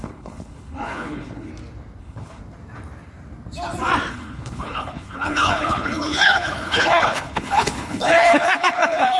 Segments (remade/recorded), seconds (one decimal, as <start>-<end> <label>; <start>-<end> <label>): 0.0-1.5 remade; 1.5-2.0 recorded; 2.0-2.4 remade; 2.4-4.1 recorded; 4.1-9.2 remade